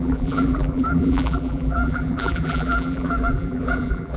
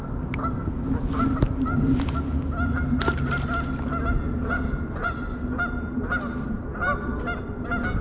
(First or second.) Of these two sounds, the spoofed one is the first